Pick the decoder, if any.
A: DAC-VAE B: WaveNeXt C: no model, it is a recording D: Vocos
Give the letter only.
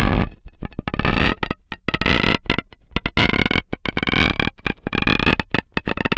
C